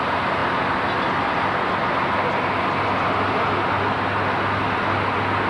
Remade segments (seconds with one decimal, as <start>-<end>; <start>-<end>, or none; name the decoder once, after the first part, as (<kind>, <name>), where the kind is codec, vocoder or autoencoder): none